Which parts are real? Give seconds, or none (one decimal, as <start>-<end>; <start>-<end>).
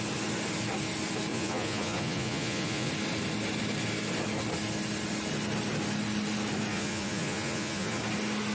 0.0-1.3; 2.9-6.7; 8.0-8.5